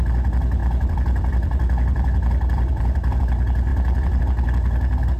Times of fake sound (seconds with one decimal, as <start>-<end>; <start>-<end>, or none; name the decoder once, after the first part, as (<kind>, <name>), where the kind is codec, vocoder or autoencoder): 0.6-3.2 (vocoder, BigVGAN v2); 3.7-4.2